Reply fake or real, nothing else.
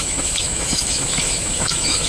fake